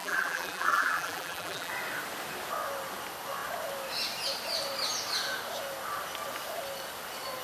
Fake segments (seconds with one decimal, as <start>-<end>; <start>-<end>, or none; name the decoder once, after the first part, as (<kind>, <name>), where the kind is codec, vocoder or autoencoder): 0.0-1.7 (vocoder, BigVGAN v2)